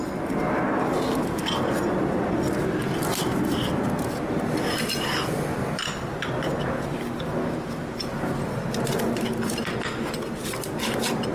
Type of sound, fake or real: real